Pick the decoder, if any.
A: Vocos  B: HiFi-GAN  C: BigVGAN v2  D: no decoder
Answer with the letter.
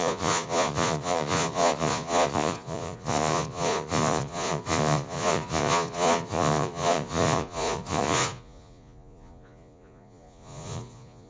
A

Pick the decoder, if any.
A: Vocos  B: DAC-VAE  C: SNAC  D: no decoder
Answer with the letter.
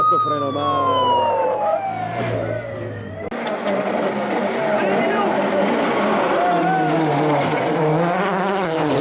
D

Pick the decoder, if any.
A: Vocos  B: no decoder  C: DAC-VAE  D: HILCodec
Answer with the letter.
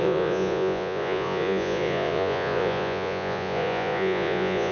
A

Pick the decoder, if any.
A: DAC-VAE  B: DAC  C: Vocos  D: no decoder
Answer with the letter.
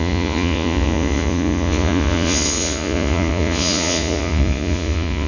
C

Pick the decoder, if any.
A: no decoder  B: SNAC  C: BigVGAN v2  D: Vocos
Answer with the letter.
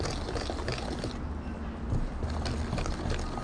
A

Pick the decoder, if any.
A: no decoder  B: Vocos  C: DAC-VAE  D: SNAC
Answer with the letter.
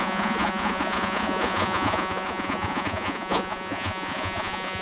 B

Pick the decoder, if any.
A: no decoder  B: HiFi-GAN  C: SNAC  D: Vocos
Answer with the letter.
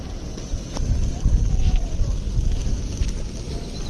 A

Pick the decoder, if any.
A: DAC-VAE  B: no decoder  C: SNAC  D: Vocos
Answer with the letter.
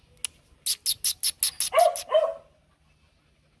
B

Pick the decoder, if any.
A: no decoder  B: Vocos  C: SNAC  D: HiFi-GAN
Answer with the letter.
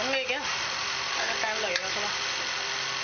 A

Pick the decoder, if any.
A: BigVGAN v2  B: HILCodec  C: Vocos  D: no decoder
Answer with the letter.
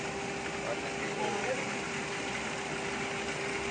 D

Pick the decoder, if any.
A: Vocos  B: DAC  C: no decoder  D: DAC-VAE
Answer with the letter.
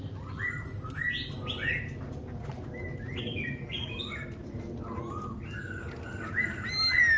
C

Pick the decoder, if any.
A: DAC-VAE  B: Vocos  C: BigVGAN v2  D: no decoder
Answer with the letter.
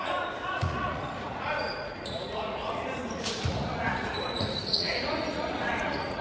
B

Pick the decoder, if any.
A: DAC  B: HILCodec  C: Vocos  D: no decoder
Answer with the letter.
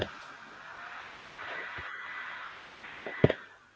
D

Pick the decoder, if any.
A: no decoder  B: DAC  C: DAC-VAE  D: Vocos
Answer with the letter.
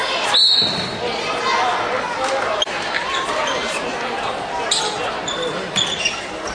A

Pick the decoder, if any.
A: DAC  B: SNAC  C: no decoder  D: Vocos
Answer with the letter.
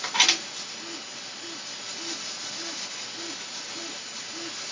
C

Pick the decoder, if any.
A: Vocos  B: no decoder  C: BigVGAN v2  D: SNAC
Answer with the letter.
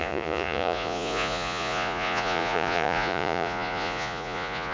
A